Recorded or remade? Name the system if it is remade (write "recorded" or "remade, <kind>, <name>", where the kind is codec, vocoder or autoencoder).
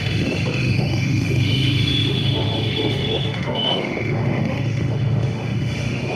remade, autoencoder, DAC-VAE